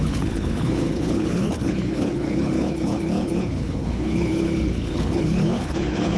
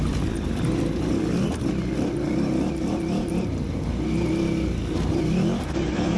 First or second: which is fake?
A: first